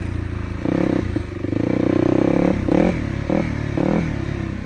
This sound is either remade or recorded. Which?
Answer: recorded